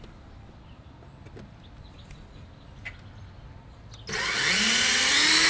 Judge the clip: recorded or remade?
recorded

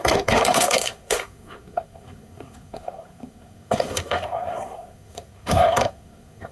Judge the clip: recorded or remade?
remade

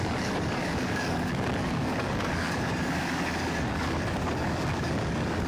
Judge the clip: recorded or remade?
remade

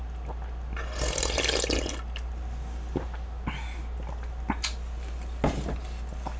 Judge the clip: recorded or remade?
recorded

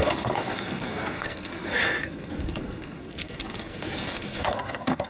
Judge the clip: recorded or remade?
remade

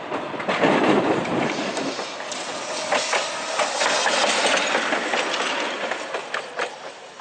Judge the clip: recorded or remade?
recorded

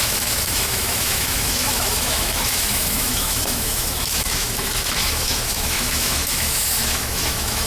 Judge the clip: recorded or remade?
remade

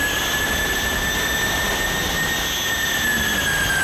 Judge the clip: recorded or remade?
recorded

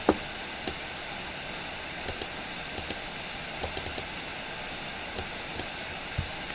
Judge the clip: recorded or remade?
recorded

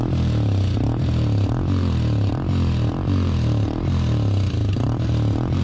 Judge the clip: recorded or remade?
remade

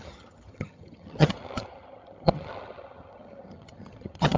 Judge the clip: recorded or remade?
remade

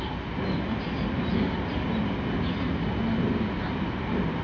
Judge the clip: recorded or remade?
recorded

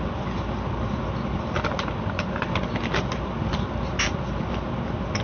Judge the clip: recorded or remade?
recorded